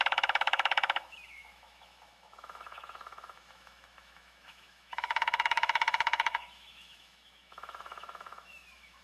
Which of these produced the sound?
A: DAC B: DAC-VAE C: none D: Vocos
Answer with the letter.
B